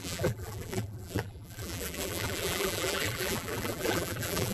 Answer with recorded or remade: remade